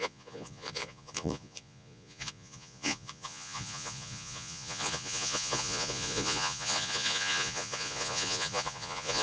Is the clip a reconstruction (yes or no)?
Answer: yes